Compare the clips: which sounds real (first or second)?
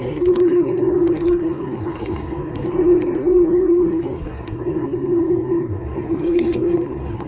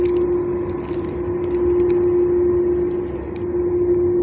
second